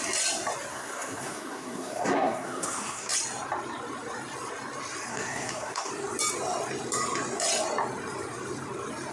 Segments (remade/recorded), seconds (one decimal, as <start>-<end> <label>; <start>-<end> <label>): 0.0-0.7 recorded; 0.7-3.1 remade; 3.1-5.1 recorded; 5.1-5.9 remade; 5.9-9.1 recorded